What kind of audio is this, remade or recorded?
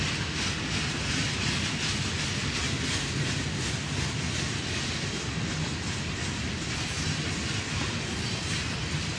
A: recorded